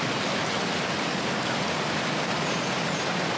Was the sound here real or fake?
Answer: real